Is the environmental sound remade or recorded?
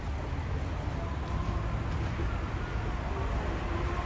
recorded